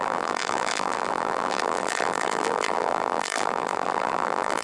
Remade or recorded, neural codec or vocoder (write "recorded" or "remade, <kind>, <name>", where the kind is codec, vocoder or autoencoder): remade, vocoder, BigVGAN v2